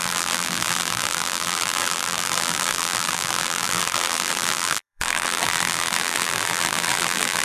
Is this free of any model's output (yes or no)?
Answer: no